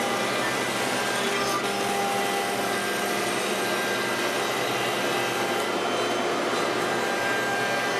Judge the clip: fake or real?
real